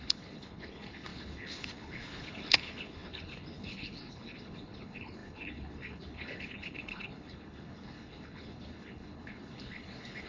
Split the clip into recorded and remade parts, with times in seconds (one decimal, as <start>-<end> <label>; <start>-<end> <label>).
0.0-10.3 remade